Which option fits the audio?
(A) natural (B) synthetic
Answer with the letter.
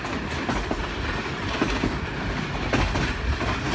A